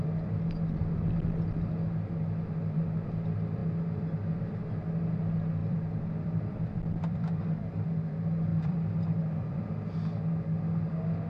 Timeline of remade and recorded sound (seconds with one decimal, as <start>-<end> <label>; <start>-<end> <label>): 0.0-3.6 recorded; 3.6-4.6 remade; 4.6-5.6 recorded; 5.6-7.4 remade; 7.4-8.5 recorded; 8.5-9.7 remade; 9.7-11.3 recorded